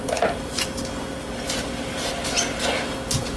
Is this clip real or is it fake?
real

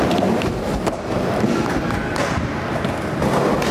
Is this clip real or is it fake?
real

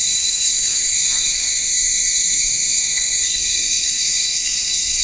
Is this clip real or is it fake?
fake